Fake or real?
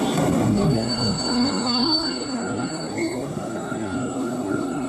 fake